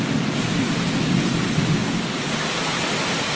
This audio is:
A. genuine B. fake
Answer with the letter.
A